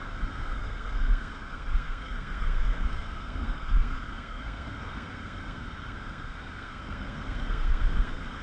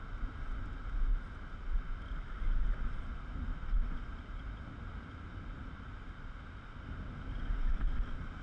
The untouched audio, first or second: second